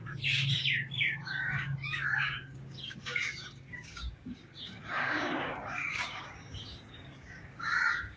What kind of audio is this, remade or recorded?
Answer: remade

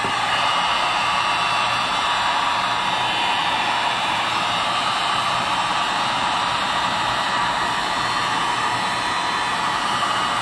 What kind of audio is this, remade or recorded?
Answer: remade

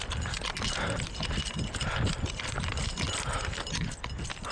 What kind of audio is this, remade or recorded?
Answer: recorded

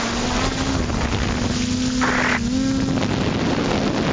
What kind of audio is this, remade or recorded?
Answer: recorded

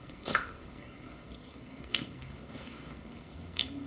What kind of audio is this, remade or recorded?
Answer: remade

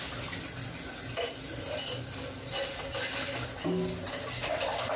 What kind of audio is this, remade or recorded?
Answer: recorded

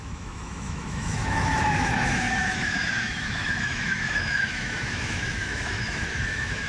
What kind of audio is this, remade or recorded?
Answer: remade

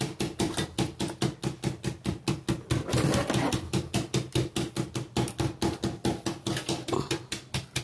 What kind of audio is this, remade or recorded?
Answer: recorded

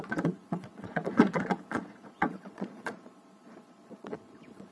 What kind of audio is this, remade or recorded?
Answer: remade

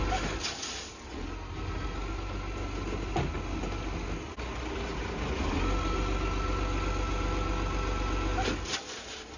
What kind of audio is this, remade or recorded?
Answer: recorded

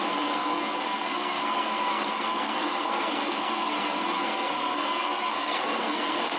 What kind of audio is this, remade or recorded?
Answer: remade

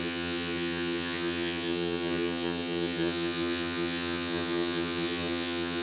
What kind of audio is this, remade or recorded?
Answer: remade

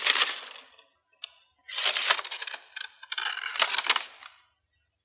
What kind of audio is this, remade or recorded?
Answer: recorded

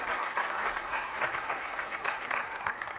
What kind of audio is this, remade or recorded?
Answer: remade